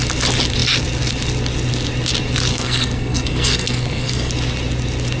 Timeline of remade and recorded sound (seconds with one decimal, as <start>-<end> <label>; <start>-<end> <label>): 0.0-2.5 recorded; 2.5-4.3 remade; 4.3-5.2 recorded

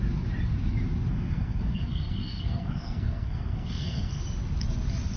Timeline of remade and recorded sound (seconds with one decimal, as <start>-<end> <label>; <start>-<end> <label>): 0.0-1.1 recorded; 1.1-4.2 remade; 4.2-5.2 recorded